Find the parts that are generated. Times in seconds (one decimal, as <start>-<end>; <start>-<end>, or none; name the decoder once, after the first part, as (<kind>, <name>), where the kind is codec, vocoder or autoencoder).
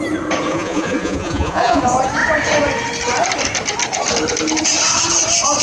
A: 0.5-1.8 (vocoder, Vocos)